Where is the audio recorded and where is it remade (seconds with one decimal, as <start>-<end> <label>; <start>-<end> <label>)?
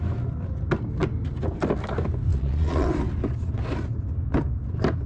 0.0-2.3 recorded; 2.3-2.9 remade; 2.9-5.1 recorded